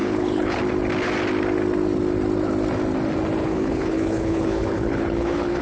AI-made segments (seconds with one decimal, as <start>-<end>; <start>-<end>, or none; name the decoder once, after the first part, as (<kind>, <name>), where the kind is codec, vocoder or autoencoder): 0.0-0.6 (codec, HILCodec); 3.4-5.6